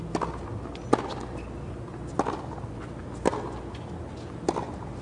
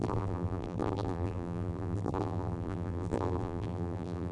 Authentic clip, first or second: first